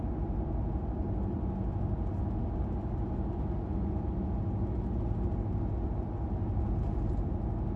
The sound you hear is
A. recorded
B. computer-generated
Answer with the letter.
A